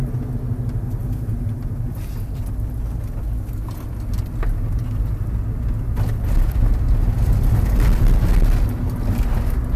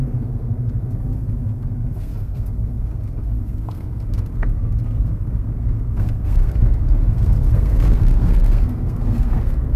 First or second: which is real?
first